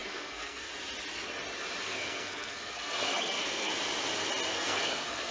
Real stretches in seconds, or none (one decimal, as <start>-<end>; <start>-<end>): 0.7-1.8; 3.7-4.5